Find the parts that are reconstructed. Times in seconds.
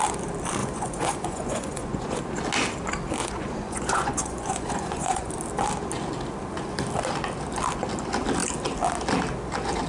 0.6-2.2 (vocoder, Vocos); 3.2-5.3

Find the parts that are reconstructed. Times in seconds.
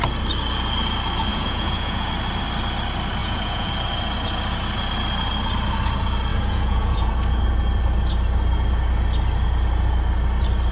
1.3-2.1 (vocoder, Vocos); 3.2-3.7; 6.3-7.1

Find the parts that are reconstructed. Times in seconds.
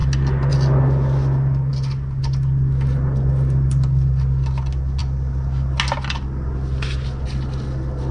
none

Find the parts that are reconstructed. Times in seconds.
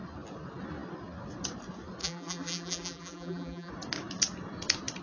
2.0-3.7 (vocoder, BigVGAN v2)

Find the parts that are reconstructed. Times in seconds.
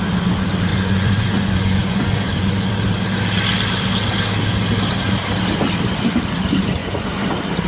0.7-2.7 (vocoder, Vocos); 6.8-7.3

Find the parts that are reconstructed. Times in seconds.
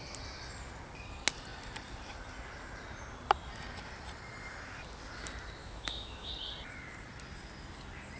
5.6-6.3 (autoencoder, DAC-VAE)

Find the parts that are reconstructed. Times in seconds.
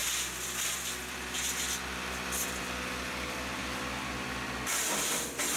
none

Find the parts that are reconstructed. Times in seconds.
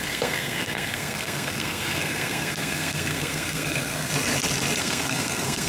0.0-4.1 (codec, SNAC); 4.8-5.7